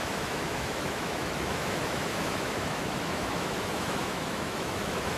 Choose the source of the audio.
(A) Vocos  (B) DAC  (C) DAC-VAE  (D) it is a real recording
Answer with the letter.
C